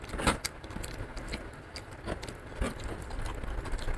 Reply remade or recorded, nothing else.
recorded